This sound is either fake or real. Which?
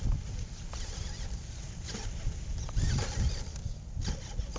real